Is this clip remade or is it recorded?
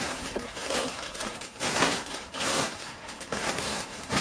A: remade